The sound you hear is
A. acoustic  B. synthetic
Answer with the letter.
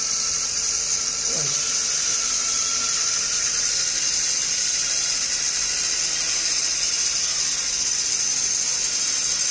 A